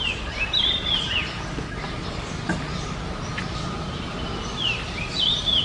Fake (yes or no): no